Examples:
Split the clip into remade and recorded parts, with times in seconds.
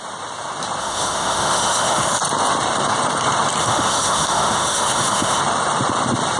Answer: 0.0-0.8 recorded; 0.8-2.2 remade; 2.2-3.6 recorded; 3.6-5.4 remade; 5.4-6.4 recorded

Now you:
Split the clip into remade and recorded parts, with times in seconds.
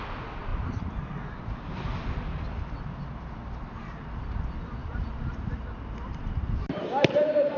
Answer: 0.0-4.8 recorded; 4.8-7.6 remade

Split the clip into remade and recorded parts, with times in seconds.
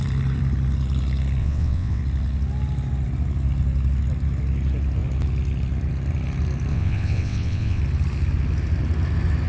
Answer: 0.0-1.4 recorded; 1.4-2.0 remade; 2.0-6.7 recorded; 6.7-7.8 remade; 7.8-9.5 recorded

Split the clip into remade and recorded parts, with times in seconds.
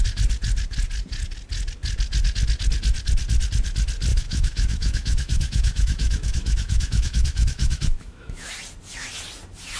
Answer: 0.0-4.1 recorded; 4.1-8.5 remade; 8.5-9.8 recorded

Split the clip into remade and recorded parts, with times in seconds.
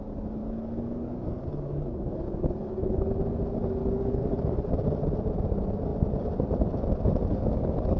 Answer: 0.0-0.4 recorded; 0.4-3.1 remade; 3.1-3.8 recorded; 3.8-4.7 remade; 4.7-7.3 recorded; 7.3-8.0 remade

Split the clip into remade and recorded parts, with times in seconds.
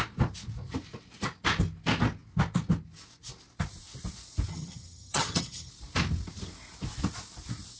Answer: 0.0-4.5 recorded; 4.5-5.7 remade; 5.7-7.8 recorded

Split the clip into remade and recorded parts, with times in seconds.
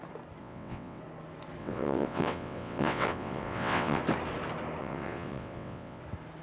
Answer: 0.0-0.4 recorded; 0.4-1.0 remade; 1.0-1.6 recorded; 1.6-4.0 remade; 4.0-4.8 recorded; 4.8-6.0 remade; 6.0-6.4 recorded